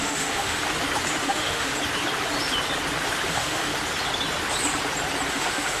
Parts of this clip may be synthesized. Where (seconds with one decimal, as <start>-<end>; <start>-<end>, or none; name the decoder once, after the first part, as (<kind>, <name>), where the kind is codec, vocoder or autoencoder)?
0.0-0.6 (autoencoder, DAC-VAE); 1.2-1.7; 3.3-3.7; 5.3-5.8